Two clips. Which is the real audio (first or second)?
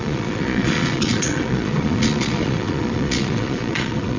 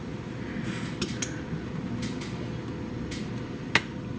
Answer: second